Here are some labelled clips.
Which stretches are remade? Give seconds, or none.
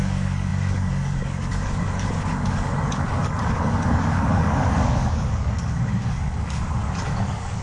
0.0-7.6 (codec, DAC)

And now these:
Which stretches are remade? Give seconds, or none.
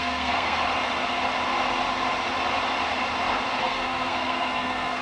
0.0-0.6 (codec, SNAC); 3.6-5.0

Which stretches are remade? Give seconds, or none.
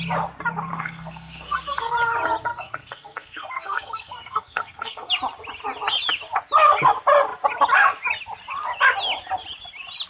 0.7-1.9 (codec, SNAC); 2.5-5.1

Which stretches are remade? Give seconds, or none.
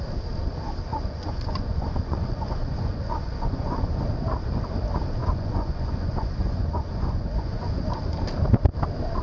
0.9-4.0 (vocoder, Vocos); 5.2-7.8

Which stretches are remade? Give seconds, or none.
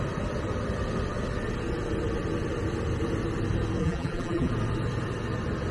3.8-4.5 (vocoder, BigVGAN v2)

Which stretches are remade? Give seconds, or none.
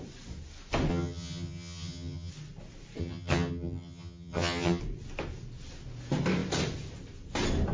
0.9-2.3 (vocoder, HiFi-GAN); 3.0-4.8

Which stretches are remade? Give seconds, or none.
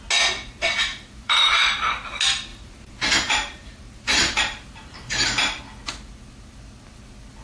0.9-1.9 (vocoder, BigVGAN v2); 2.5-5.6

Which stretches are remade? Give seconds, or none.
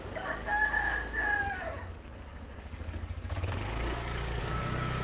0.0-0.5 (codec, DAC); 1.4-5.0